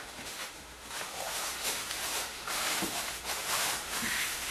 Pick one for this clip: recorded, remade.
remade